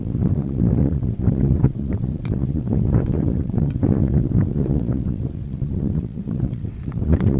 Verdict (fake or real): fake